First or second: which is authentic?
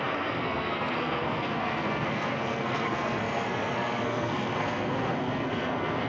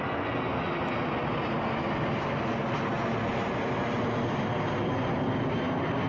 second